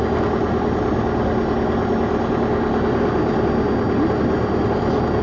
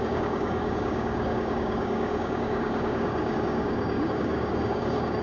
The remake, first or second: second